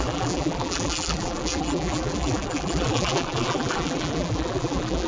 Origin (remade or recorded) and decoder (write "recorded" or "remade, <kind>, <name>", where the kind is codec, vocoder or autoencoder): remade, vocoder, BigVGAN v2